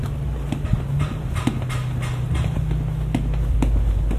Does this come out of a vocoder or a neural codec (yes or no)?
no